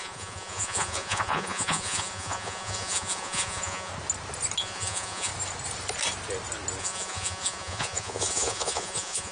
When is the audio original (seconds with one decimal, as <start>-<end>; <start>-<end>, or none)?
3.9-4.6; 5.3-6.8